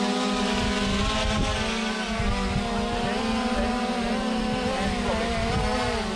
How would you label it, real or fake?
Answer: real